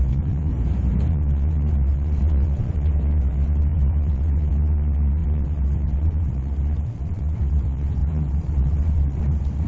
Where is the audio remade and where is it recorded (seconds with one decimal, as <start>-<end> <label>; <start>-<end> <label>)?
0.0-0.5 remade; 0.5-1.1 recorded; 1.1-9.7 remade